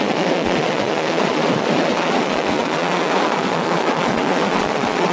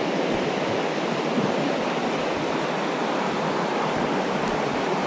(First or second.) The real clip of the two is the second